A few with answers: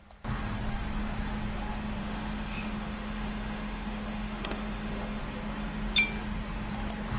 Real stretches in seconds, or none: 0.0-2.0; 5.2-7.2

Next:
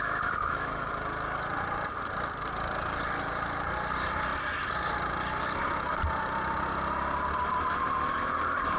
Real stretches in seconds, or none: 0.9-8.8